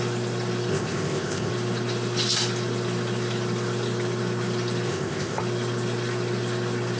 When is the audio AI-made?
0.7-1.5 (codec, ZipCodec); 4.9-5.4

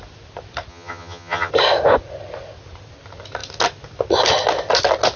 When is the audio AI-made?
0.7-1.5 (vocoder, HiFi-GAN)